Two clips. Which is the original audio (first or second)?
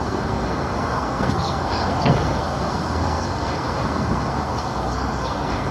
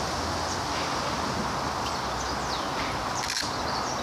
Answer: second